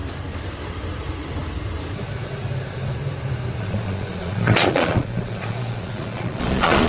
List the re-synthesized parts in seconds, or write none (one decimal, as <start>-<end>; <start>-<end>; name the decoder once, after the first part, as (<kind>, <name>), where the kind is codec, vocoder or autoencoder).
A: 3.6-6.9 (vocoder, Vocos)